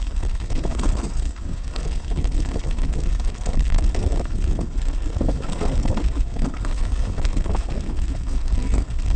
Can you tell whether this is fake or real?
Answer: fake